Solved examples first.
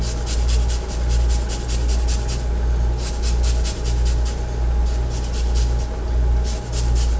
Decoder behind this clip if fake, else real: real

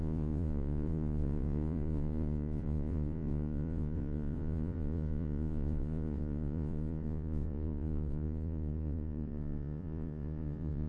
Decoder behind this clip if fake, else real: fake, vocoder, Vocos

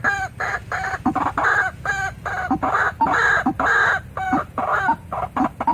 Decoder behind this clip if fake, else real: real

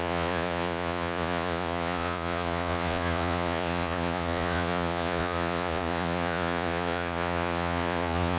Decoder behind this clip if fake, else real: fake, vocoder, Vocos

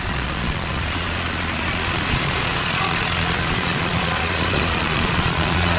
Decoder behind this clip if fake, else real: fake, vocoder, Vocos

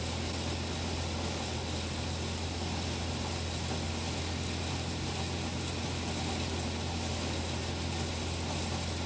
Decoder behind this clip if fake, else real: real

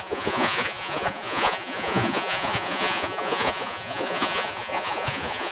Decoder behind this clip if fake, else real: fake, vocoder, Vocos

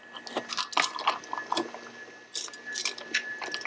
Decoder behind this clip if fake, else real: real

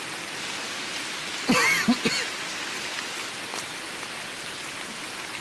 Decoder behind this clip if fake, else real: real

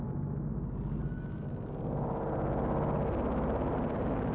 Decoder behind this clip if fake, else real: real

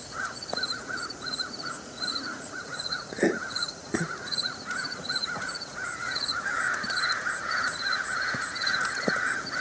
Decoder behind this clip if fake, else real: fake, vocoder, Vocos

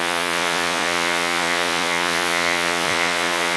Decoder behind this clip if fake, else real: fake, vocoder, Vocos